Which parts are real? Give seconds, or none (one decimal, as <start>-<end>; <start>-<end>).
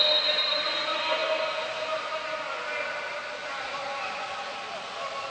0.0-5.3